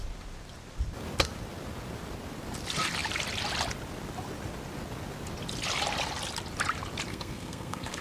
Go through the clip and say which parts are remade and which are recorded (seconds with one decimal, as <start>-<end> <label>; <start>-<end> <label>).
0.0-7.1 recorded; 7.1-8.0 remade